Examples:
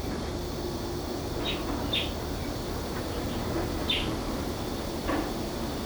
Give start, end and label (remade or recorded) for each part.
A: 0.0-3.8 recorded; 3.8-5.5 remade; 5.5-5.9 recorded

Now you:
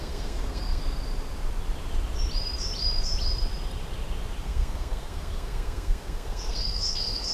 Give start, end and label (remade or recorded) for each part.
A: 0.0-0.8 remade; 0.8-4.4 recorded; 4.4-7.3 remade

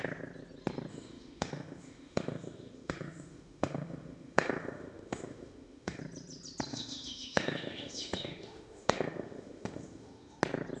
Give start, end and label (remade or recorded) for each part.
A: 0.0-0.9 recorded; 0.9-6.0 remade; 6.0-6.7 recorded; 6.7-10.4 remade; 10.4-10.8 recorded